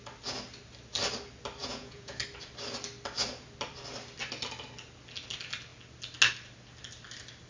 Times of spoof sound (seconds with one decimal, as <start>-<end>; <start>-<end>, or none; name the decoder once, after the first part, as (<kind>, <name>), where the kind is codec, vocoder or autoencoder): 1.6-2.2 (vocoder, Vocos)